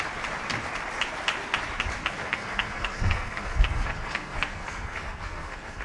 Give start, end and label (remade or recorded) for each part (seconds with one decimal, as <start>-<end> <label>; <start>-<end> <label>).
0.0-2.1 recorded; 2.1-5.8 remade